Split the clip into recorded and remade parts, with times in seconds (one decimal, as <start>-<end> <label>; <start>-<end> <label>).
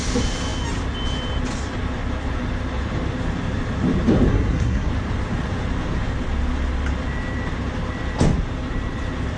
0.0-4.3 recorded; 4.3-4.9 remade; 4.9-9.4 recorded